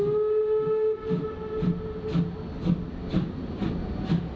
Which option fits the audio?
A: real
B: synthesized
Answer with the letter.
A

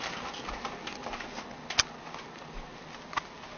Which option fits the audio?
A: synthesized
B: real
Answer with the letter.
B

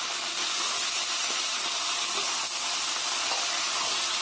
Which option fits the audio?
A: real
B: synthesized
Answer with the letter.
A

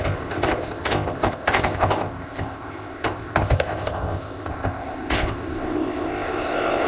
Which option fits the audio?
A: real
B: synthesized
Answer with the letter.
B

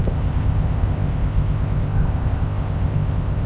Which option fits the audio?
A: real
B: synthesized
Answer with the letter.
B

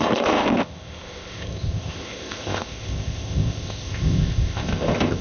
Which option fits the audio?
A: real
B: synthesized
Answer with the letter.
B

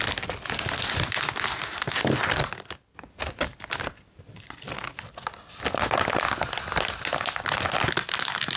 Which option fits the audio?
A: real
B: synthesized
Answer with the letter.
A